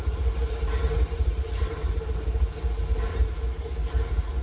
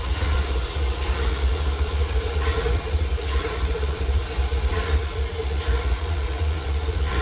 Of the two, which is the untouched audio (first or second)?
first